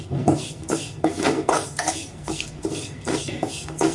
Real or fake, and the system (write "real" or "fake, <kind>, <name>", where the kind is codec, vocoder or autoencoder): fake, codec, SNAC